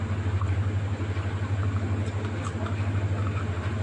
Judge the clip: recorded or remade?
recorded